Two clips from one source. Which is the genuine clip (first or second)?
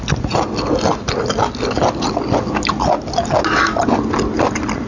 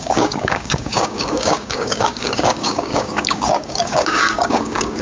first